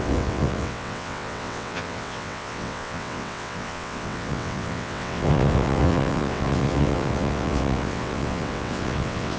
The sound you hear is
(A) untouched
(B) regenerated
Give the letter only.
B